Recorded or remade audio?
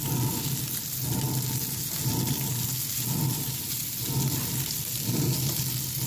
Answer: recorded